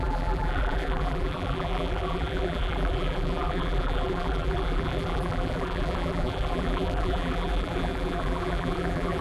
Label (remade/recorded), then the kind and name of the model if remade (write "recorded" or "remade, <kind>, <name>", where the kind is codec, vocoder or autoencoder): remade, vocoder, BigVGAN v2